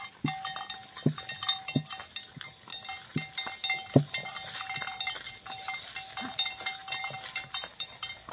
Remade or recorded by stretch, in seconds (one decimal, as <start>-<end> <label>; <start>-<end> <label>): 0.0-8.3 recorded